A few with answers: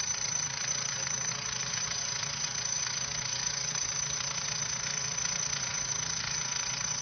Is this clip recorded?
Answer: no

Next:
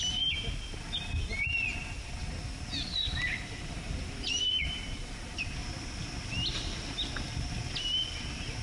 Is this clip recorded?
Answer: yes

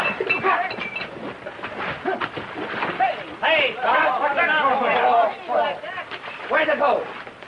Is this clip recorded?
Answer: yes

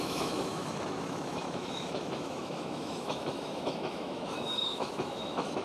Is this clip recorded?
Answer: no